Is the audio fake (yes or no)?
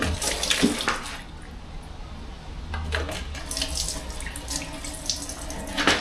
no